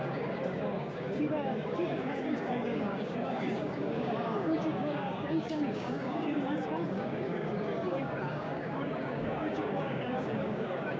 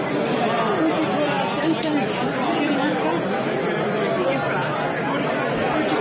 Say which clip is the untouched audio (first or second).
second